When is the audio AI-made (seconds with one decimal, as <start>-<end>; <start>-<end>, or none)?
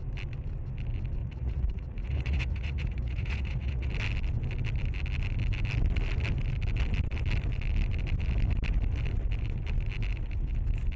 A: 1.2-3.9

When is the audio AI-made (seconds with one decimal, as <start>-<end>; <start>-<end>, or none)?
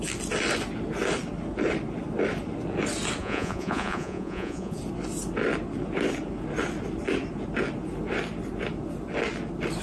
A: 3.2-4.8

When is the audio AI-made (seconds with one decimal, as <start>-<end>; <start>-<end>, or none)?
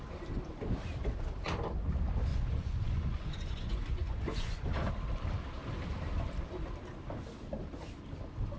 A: 2.3-4.9